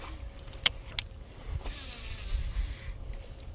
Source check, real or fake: real